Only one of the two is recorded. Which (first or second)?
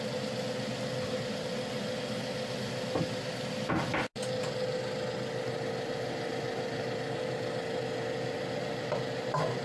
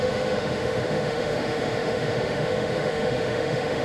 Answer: first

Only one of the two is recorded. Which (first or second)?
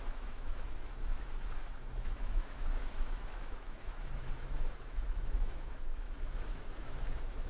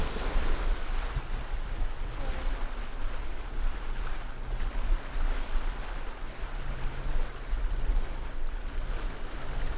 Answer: second